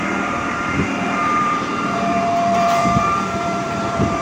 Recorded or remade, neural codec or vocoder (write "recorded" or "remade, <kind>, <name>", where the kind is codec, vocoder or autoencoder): remade, vocoder, BigVGAN v2